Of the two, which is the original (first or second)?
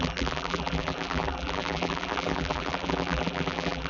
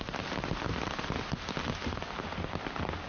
second